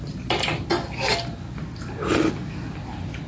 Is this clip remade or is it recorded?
recorded